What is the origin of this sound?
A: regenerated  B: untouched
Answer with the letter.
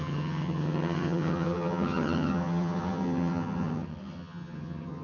A